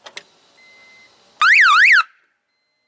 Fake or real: real